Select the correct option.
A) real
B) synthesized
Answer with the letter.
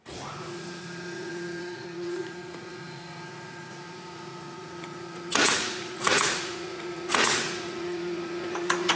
B